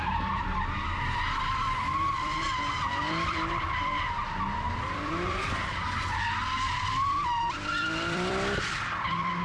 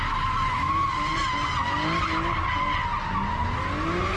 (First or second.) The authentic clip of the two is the second